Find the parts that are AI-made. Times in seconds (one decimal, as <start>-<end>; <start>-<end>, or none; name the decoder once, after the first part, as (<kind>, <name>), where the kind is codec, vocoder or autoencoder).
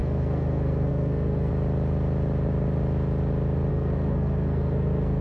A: 0.0-1.5 (codec, SNAC); 3.7-5.2